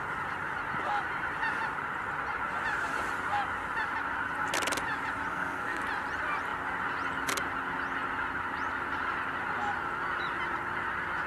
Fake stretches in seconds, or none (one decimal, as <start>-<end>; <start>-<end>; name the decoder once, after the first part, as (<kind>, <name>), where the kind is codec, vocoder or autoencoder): 5.3-5.8 (codec, SNAC)